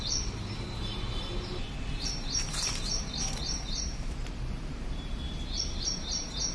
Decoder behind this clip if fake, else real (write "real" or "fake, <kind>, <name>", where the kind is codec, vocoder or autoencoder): fake, vocoder, BigVGAN v2